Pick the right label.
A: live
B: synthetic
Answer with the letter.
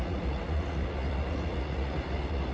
B